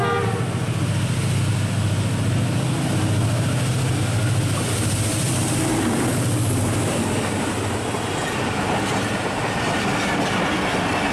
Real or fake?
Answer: real